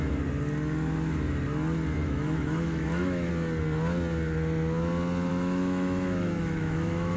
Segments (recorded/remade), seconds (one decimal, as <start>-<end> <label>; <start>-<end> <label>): 0.0-2.0 recorded; 2.0-3.3 remade; 3.3-5.3 recorded; 5.3-7.2 remade